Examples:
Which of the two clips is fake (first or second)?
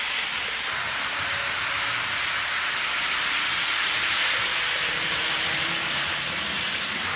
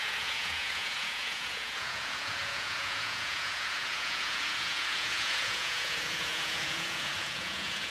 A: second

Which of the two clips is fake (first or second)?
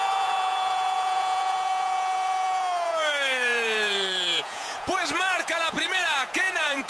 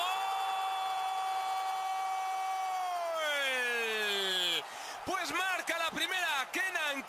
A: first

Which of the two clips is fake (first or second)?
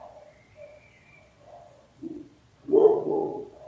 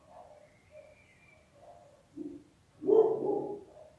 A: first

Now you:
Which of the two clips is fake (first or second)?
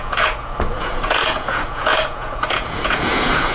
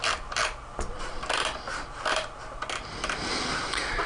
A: first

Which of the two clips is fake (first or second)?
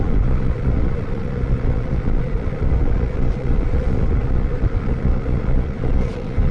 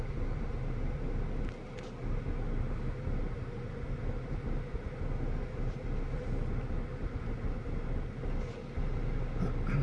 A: first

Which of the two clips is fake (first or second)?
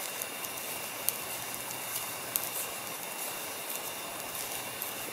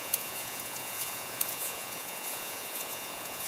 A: second